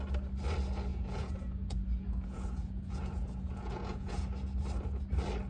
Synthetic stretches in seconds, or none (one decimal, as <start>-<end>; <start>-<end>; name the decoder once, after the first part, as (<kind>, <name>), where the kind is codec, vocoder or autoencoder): 0.9-4.2 (vocoder, Vocos)